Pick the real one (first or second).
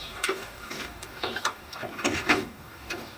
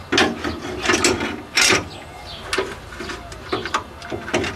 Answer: second